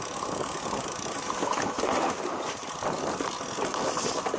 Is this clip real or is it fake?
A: real